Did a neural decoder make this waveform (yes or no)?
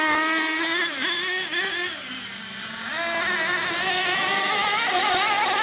no